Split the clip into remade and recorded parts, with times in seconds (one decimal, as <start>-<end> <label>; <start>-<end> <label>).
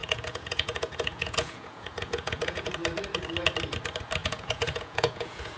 0.0-2.7 remade; 2.7-4.2 recorded; 4.2-5.6 remade